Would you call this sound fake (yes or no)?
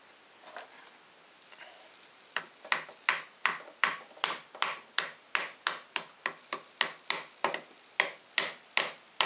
no